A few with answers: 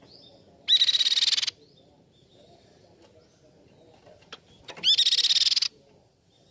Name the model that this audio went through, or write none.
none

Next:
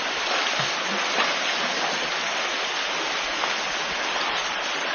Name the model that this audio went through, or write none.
none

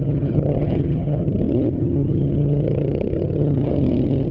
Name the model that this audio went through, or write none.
vocoder, HiFi-GAN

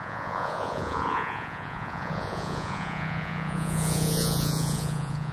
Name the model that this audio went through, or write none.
vocoder, Vocos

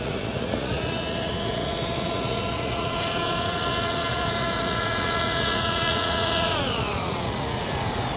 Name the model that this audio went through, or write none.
vocoder, Vocos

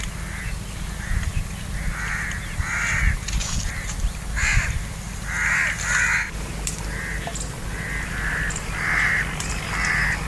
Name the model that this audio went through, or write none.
none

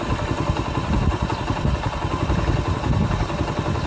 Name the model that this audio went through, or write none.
none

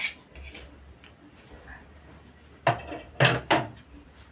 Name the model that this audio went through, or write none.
none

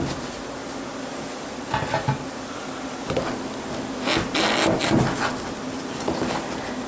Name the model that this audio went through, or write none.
none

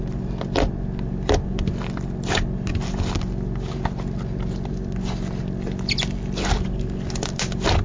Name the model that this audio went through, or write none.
none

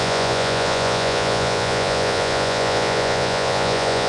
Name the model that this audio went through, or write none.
vocoder, Vocos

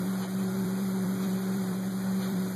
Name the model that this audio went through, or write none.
vocoder, BigVGAN v2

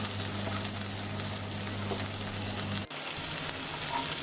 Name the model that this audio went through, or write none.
none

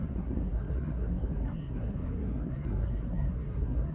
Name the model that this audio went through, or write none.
codec, SNAC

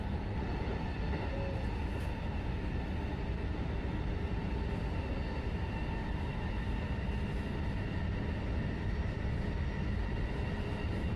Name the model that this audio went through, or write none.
none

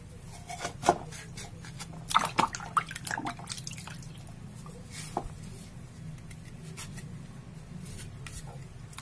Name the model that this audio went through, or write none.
none